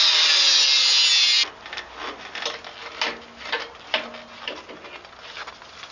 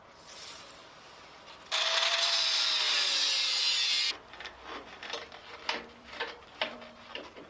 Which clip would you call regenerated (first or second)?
second